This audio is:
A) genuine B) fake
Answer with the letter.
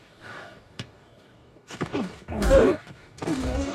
B